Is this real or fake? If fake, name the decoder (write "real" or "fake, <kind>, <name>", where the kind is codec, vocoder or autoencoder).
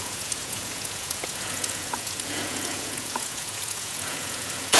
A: fake, vocoder, Vocos